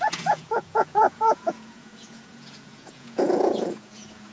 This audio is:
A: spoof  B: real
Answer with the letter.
A